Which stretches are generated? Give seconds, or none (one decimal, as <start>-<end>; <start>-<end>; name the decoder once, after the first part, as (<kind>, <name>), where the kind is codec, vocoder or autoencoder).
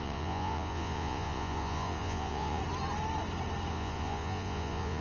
0.0-2.6 (vocoder, Vocos); 3.7-5.0